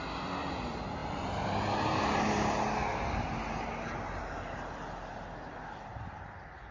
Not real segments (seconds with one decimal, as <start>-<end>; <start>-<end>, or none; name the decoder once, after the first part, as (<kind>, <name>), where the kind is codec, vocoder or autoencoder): none

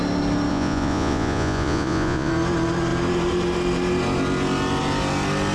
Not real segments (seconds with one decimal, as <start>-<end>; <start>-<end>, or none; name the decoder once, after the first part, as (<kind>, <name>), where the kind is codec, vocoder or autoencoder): 0.5-2.3 (vocoder, Vocos)

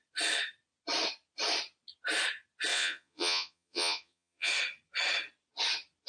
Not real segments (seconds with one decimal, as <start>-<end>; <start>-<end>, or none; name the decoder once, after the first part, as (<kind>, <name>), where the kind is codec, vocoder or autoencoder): 2.7-4.5 (vocoder, Vocos)

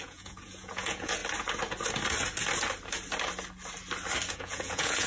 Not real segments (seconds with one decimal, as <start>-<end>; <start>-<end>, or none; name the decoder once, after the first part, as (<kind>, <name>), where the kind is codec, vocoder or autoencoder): 0.0-1.2 (vocoder, Vocos); 4.3-5.1

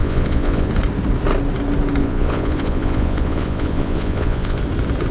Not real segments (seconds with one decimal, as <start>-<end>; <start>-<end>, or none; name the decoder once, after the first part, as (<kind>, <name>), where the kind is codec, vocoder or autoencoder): 0.0-0.7 (vocoder, Vocos); 2.0-4.6

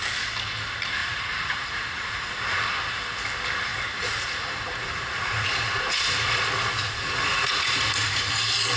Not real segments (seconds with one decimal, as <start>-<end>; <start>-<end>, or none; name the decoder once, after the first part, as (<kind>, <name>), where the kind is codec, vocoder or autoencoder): 1.0-2.6 (vocoder, Vocos); 3.7-8.3

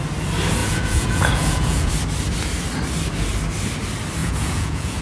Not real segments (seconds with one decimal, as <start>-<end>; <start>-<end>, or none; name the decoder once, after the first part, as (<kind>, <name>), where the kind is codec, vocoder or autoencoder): 0.6-1.9 (vocoder, Vocos); 4.2-5.0